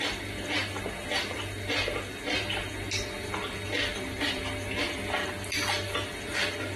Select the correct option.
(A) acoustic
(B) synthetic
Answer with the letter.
A